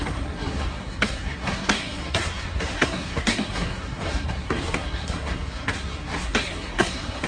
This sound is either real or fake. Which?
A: fake